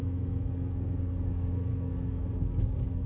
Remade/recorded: remade